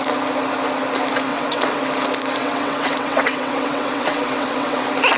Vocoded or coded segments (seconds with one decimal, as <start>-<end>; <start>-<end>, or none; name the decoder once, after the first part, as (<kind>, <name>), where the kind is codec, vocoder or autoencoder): 1.3-1.8 (vocoder, WaveNeXt); 2.4-4.8